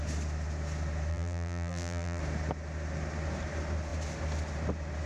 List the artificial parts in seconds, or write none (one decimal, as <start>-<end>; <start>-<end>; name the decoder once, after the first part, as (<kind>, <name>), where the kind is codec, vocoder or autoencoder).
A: 1.1-2.2 (vocoder, BigVGAN v2)